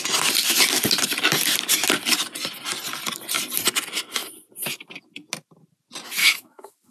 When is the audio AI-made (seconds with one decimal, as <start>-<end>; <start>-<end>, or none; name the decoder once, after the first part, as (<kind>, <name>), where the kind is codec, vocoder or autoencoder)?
6.2-6.9 (autoencoder, DAC-VAE)